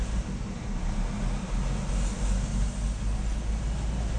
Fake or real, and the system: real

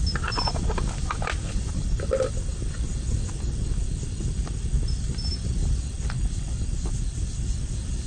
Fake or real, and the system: real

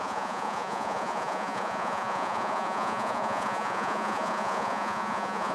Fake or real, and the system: fake, vocoder, Vocos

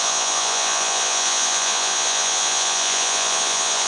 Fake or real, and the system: fake, vocoder, Vocos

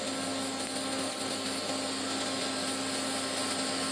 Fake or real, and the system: real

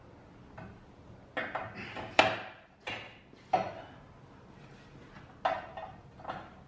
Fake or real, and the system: real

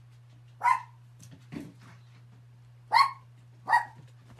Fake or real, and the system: real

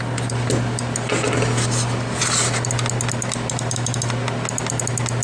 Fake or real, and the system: real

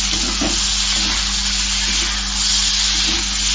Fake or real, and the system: real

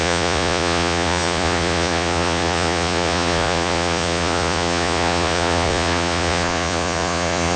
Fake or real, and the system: fake, vocoder, Vocos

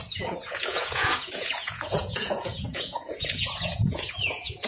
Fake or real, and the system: fake, vocoder, Vocos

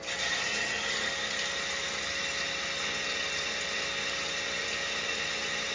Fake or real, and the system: real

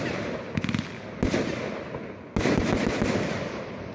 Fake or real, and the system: real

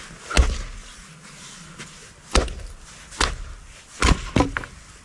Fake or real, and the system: real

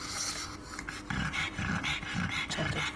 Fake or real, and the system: real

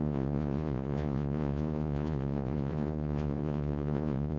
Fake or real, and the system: fake, vocoder, Vocos